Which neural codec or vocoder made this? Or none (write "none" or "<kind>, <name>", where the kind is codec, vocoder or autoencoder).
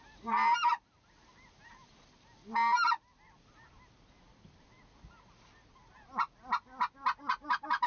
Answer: none